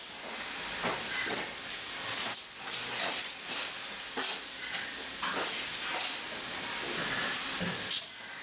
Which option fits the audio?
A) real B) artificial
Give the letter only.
A